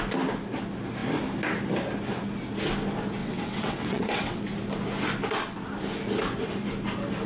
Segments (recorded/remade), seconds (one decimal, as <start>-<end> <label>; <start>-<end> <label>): 0.0-3.2 recorded; 3.2-4.4 remade; 4.4-7.3 recorded